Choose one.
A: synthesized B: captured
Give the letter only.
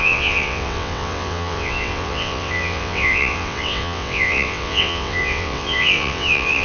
A